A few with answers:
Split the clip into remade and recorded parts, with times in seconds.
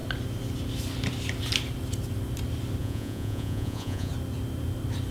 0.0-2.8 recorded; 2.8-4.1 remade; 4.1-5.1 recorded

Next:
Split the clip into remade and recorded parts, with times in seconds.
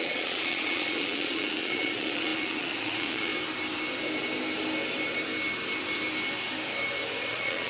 0.0-3.3 remade; 3.3-7.3 recorded; 7.3-7.7 remade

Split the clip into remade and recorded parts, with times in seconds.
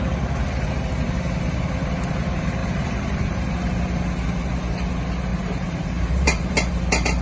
0.0-2.6 recorded; 2.6-3.5 remade; 3.5-5.3 recorded; 5.3-6.7 remade; 6.7-7.2 recorded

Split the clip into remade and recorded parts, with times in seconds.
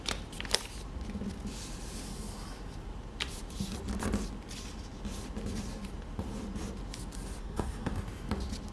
0.0-7.4 recorded; 7.4-7.9 remade; 7.9-8.7 recorded